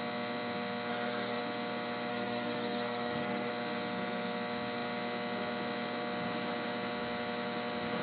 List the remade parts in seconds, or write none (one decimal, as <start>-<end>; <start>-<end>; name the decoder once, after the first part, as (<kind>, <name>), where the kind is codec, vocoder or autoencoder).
0.9-1.4 (codec, SNAC); 2.1-3.5

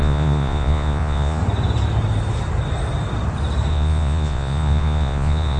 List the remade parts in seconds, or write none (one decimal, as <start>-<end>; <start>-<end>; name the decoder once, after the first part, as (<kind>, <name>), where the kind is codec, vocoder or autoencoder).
0.0-1.4 (vocoder, Vocos); 3.7-5.6

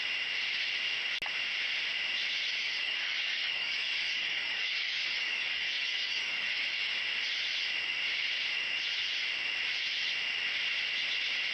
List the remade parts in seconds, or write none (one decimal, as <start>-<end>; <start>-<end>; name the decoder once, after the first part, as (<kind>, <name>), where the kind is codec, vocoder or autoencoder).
2.6-6.9 (codec, DAC)

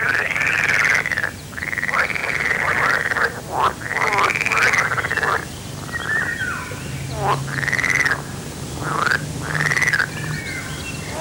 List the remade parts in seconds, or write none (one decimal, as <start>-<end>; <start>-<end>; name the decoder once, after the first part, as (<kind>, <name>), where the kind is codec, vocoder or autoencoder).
2.2-2.7 (vocoder, BigVGAN v2)

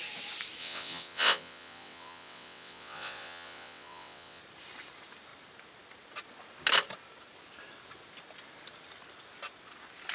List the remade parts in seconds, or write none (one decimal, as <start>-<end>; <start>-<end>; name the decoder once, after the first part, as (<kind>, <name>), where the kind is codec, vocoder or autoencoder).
0.6-4.4 (vocoder, WaveNeXt)